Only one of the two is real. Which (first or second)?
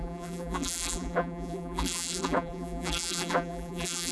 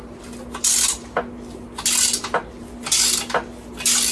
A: second